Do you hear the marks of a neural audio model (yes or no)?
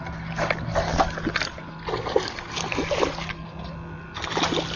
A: no